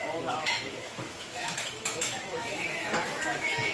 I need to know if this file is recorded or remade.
remade